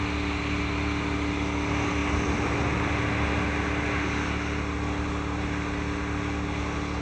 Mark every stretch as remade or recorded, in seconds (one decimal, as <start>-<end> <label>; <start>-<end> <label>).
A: 0.0-7.0 recorded